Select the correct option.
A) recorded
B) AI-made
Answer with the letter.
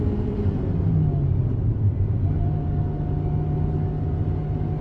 A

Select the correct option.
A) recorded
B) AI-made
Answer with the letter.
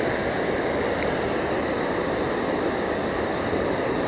A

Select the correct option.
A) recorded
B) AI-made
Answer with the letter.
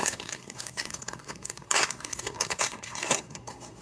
B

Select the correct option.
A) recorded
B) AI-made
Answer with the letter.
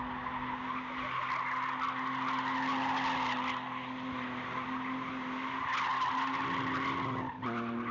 A